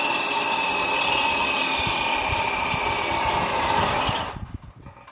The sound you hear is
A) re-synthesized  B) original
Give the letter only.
B